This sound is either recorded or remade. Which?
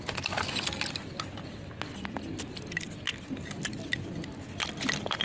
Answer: recorded